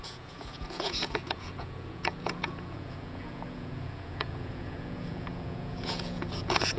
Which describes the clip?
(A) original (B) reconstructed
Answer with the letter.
B